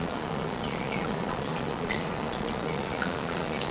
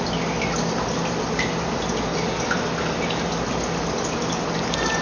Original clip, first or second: second